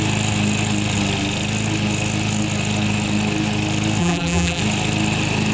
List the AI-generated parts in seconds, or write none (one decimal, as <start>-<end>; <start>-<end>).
4.0-4.6